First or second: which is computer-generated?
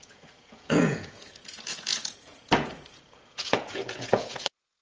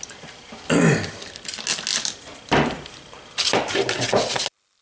first